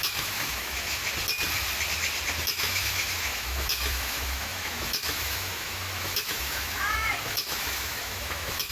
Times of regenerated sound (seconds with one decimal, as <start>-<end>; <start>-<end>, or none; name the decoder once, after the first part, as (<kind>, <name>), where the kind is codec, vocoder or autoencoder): 0.0-1.0 (autoencoder, DAC-VAE); 2.4-8.7